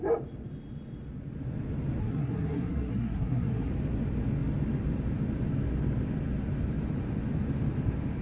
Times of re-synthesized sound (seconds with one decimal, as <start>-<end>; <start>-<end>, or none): 2.0-3.7